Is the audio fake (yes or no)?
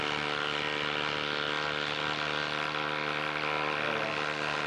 no